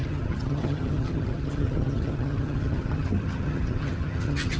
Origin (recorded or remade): remade